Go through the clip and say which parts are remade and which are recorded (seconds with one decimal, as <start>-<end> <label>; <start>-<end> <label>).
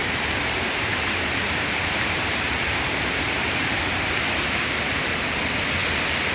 0.0-3.8 remade; 3.8-6.3 recorded